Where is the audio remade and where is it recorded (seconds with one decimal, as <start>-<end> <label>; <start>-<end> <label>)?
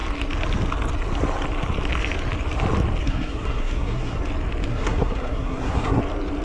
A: 0.0-3.0 recorded; 3.0-4.2 remade; 4.2-4.7 recorded; 4.7-6.0 remade; 6.0-6.4 recorded